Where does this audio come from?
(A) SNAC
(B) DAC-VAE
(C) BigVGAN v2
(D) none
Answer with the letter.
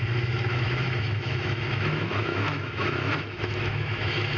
B